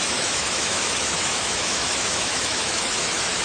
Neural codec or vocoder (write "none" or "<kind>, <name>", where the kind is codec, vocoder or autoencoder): autoencoder, DAC-VAE